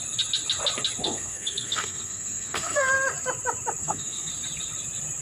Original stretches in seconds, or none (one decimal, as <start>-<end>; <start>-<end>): 0.0-1.0; 2.9-3.8; 4.3-5.2